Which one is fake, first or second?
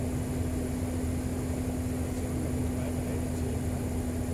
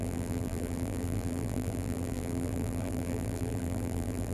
second